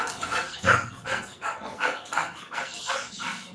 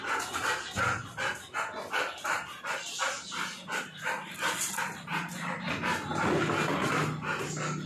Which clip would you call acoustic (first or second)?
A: second